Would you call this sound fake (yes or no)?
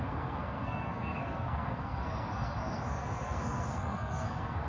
yes